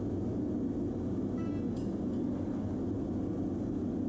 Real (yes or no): yes